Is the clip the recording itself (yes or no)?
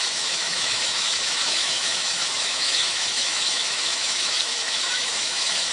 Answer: no